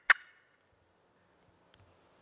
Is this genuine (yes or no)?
yes